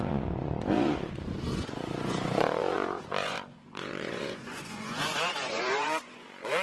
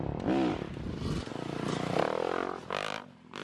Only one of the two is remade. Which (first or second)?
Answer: first